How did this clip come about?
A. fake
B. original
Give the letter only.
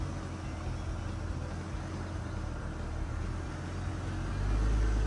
B